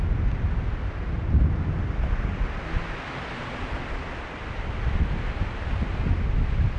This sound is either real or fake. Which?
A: real